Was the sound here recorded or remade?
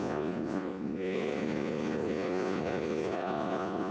remade